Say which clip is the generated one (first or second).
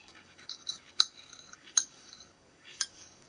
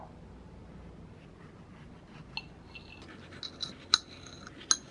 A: first